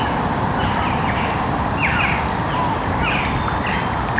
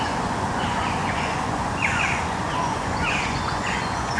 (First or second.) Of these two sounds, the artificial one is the second